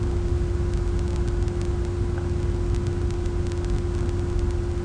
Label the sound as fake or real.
real